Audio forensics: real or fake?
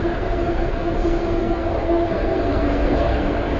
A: fake